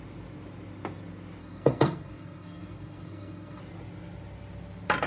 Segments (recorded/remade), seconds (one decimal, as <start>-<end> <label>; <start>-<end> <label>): 0.0-1.4 recorded; 1.4-3.6 remade; 3.6-5.1 recorded